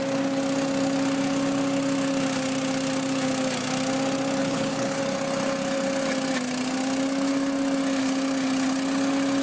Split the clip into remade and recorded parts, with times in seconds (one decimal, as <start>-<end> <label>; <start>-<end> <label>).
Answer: 0.0-4.4 recorded; 4.4-5.0 remade; 5.0-9.4 recorded